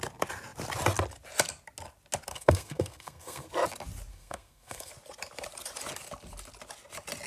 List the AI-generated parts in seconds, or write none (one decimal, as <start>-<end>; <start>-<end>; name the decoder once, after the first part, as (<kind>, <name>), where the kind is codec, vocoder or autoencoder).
2.3-3.5 (codec, SNAC); 4.1-4.9